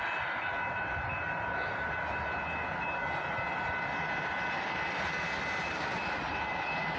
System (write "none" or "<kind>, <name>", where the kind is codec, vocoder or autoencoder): none